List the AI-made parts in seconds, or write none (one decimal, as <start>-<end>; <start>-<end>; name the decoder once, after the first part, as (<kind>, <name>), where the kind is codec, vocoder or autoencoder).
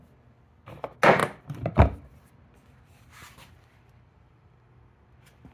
1.2-4.5 (vocoder, BigVGAN v2)